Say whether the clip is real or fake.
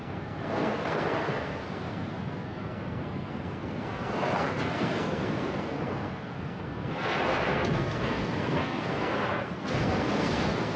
fake